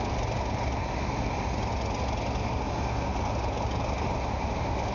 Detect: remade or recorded recorded